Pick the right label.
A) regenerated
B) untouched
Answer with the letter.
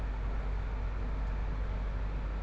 B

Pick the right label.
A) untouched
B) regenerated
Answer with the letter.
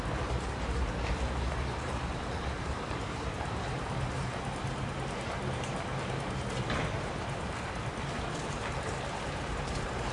B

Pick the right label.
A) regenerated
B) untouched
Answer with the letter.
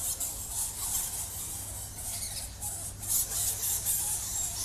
B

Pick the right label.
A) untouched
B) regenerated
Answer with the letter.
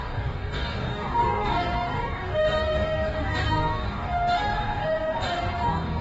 B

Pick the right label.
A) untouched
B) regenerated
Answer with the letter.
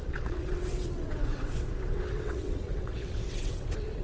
B